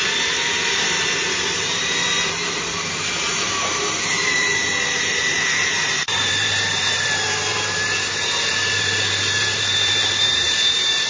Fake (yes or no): yes